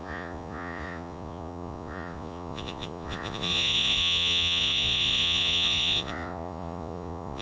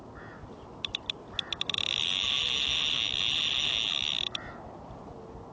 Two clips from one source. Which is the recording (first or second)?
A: second